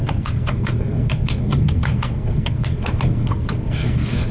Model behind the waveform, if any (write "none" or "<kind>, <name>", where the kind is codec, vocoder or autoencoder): codec, SNAC